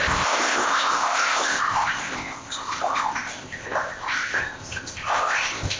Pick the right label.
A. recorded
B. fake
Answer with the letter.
B